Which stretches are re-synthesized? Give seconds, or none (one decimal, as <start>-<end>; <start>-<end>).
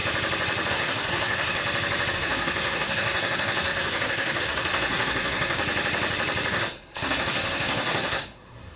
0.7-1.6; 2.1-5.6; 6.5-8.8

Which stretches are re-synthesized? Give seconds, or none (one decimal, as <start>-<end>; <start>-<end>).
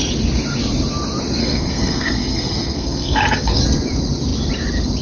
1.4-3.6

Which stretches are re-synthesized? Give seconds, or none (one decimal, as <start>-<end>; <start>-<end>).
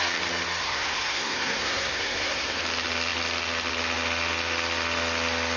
0.6-2.6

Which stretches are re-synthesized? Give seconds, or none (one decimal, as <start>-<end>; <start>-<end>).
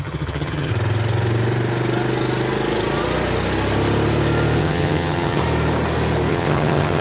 0.0-0.7; 4.6-5.4; 6.3-7.0